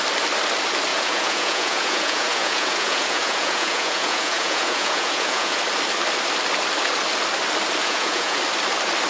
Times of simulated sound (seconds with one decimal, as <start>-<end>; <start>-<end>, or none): 0.9-5.6; 7.8-8.4